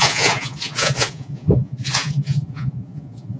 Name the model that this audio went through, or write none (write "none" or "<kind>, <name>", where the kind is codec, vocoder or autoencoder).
vocoder, Vocos